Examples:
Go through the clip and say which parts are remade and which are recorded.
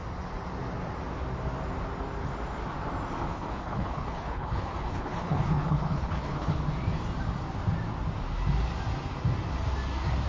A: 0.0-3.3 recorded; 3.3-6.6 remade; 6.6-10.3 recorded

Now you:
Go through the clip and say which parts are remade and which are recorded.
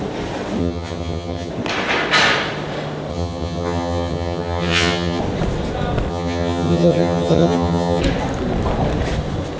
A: 0.0-0.6 recorded; 0.6-1.5 remade; 1.5-3.1 recorded; 3.1-5.2 remade; 5.2-6.1 recorded; 6.1-8.0 remade; 8.0-9.6 recorded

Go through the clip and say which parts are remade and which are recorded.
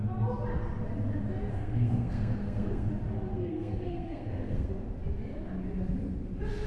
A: 0.0-1.5 recorded; 1.5-2.9 remade; 2.9-3.3 recorded; 3.3-4.7 remade; 4.7-6.7 recorded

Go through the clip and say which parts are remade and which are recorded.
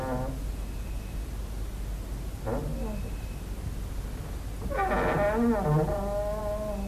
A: 0.0-6.9 recorded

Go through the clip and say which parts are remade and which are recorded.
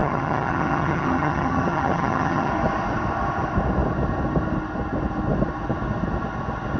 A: 0.0-2.5 remade; 2.5-6.8 recorded